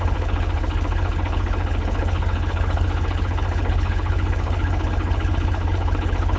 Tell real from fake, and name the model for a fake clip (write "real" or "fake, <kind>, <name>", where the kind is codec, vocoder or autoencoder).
fake, codec, HILCodec